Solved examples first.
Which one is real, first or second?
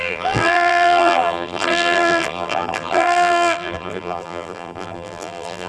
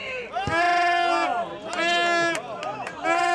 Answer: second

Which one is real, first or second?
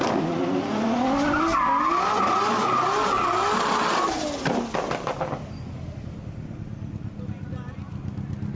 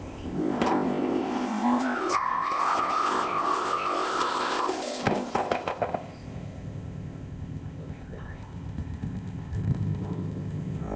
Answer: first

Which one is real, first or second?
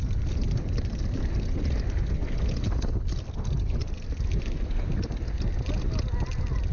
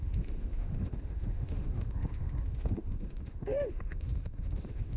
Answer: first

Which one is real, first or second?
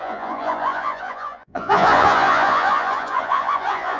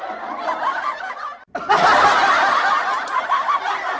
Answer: second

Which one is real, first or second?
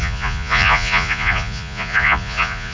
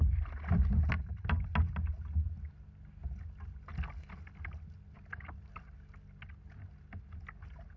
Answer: second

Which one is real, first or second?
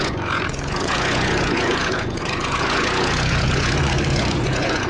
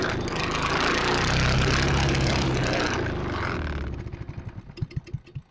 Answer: second